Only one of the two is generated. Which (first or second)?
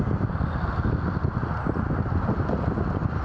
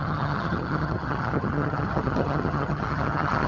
second